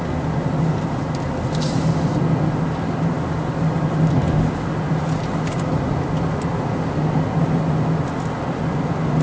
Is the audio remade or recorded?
recorded